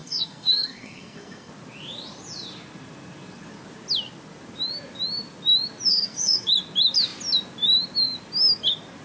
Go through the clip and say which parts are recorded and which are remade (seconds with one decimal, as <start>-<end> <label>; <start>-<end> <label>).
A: 0.0-1.5 remade; 1.5-5.9 recorded; 5.9-6.5 remade; 6.5-9.0 recorded